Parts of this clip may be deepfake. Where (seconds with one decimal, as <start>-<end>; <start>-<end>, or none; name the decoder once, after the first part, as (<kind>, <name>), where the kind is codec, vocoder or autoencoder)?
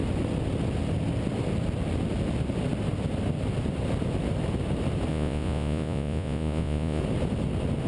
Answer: 5.1-7.0 (vocoder, Vocos)